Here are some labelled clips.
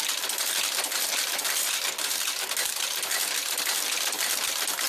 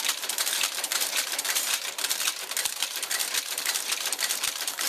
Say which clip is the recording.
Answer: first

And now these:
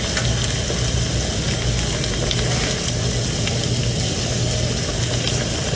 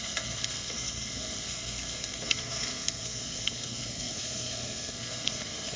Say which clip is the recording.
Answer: first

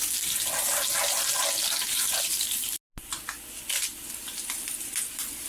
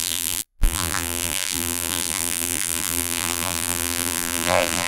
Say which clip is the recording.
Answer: first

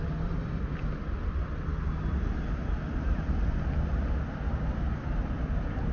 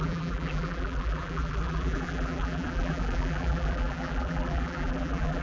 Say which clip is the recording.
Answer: first